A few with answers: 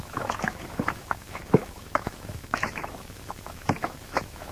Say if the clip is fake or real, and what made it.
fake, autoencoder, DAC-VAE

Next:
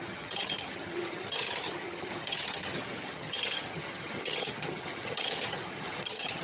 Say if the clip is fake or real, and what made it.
fake, vocoder, HiFi-GAN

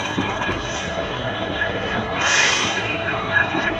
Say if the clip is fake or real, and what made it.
fake, codec, SNAC